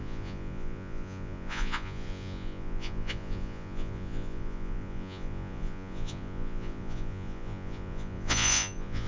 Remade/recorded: remade